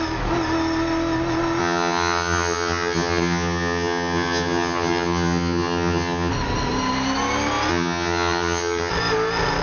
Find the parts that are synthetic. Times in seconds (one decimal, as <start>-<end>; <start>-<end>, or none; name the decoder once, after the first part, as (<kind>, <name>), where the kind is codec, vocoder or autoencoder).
1.6-6.3 (vocoder, HiFi-GAN); 7.7-8.9